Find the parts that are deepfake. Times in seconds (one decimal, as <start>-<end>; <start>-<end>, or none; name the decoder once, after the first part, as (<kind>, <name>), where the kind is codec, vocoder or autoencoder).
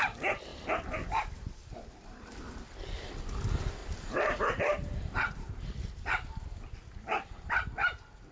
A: 3.8-5.7 (vocoder, BigVGAN v2)